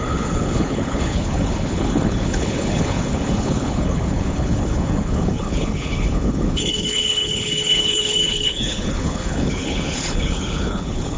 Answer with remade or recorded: remade